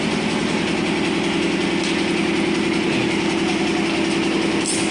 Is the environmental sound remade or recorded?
recorded